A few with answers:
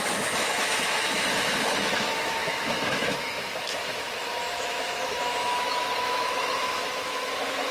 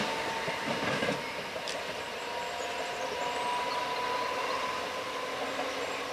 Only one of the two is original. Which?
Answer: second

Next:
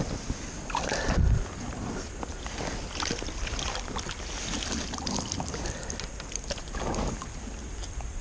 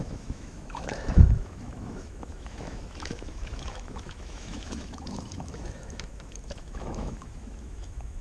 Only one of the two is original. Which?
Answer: first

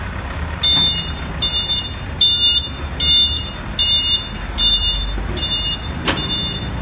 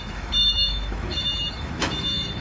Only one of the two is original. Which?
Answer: first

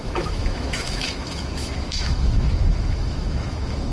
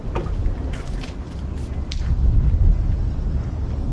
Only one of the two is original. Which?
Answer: second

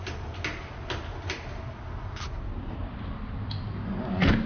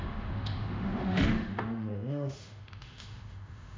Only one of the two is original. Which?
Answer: first